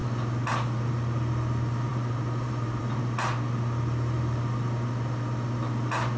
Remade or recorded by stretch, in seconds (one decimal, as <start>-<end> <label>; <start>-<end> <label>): 0.0-1.9 recorded; 1.9-2.8 remade; 2.8-6.2 recorded